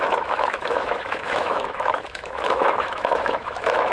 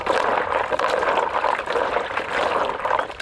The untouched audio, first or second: second